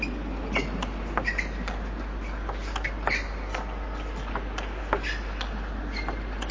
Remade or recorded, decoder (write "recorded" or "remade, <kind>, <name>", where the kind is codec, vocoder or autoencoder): recorded